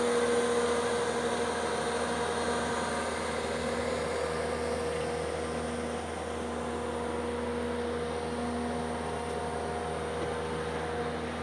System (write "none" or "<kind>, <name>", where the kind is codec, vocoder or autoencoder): none